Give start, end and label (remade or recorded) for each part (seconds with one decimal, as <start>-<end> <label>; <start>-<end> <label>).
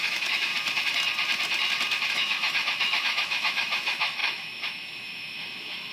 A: 0.0-0.5 remade; 0.5-2.1 recorded; 2.1-5.9 remade